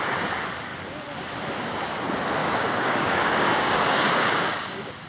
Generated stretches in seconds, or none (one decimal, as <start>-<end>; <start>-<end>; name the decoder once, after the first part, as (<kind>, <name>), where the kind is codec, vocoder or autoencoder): 2.4-5.1 (codec, DAC)